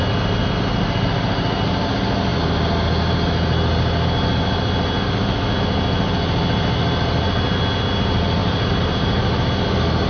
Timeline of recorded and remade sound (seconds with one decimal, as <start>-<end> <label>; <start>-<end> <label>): 0.0-8.4 recorded; 8.4-9.5 remade; 9.5-10.1 recorded